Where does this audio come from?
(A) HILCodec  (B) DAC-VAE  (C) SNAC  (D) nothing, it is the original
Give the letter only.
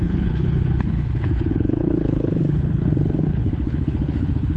A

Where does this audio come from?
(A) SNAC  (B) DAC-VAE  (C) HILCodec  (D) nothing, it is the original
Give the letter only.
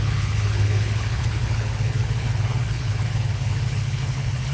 C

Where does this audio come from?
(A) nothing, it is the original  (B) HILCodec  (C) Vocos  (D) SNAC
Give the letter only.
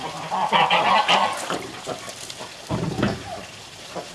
A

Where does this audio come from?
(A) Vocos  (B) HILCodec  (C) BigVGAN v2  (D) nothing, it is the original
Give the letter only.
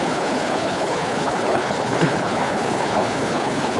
B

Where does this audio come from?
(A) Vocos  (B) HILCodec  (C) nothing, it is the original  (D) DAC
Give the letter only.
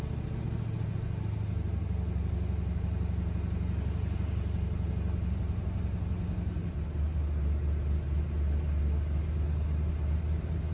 C